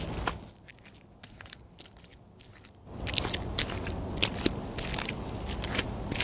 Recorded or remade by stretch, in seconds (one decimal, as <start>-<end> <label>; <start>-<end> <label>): 0.0-1.2 recorded; 1.2-1.7 remade; 1.7-6.2 recorded